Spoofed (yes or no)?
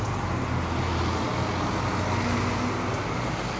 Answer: no